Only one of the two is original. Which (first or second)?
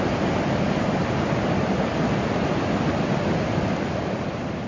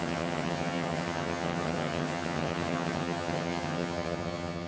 first